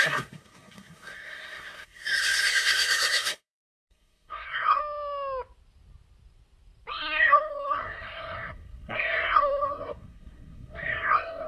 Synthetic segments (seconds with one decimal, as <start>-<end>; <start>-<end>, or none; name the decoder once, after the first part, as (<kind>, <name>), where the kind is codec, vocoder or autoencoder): 0.0-4.8 (codec, SNAC); 6.9-11.5